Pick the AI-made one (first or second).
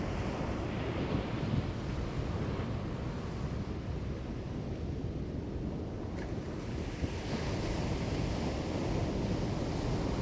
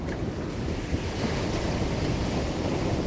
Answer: second